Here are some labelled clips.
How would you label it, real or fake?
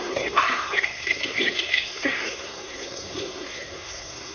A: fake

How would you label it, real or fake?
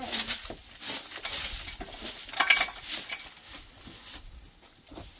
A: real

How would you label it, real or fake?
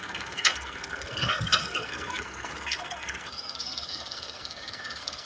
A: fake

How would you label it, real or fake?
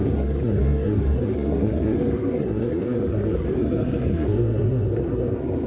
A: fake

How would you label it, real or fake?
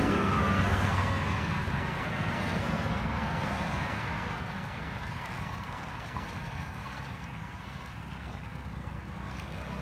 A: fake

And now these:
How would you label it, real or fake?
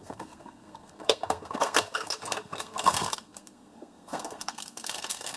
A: fake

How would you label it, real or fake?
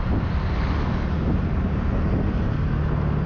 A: real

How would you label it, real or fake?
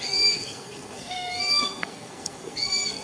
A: fake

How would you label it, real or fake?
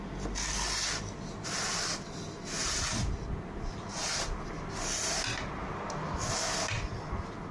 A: real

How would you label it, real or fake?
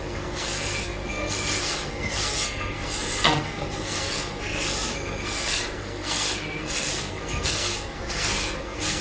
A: fake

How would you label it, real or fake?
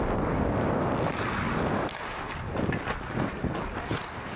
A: real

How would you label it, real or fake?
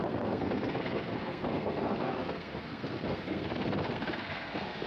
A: fake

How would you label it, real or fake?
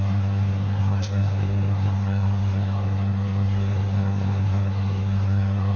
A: fake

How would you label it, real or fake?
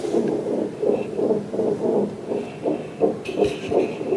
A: real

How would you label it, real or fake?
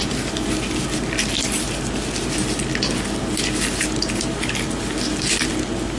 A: real